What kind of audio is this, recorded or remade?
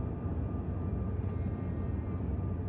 remade